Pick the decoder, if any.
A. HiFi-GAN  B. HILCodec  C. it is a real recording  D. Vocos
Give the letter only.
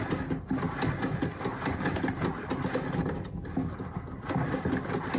C